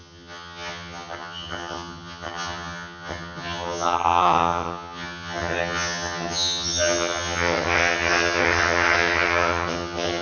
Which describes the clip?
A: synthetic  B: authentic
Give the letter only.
A